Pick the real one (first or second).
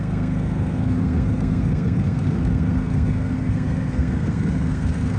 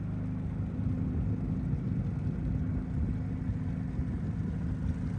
second